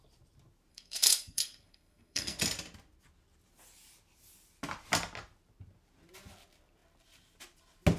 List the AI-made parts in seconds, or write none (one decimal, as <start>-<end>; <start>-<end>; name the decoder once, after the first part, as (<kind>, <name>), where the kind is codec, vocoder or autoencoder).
0.7-2.4 (codec, SNAC)